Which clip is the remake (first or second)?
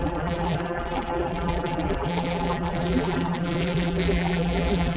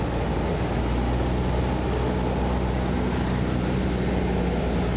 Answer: first